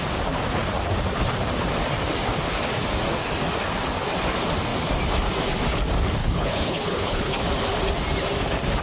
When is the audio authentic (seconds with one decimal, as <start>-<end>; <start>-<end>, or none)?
0.0-6.2; 7.4-8.8